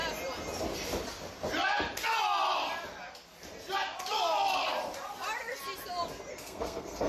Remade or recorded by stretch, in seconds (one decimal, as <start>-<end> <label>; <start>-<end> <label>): 0.0-6.3 recorded; 6.3-7.1 remade